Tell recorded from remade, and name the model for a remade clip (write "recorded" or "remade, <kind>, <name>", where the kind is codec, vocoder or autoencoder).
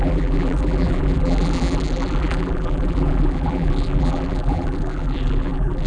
remade, vocoder, BigVGAN v2